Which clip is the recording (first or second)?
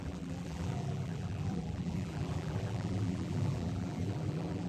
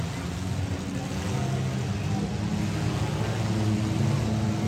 second